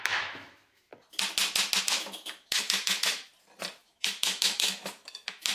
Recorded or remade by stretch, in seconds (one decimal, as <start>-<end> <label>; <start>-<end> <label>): 0.0-0.9 remade; 0.9-1.8 recorded; 1.8-3.3 remade; 3.3-3.8 recorded; 3.8-5.5 remade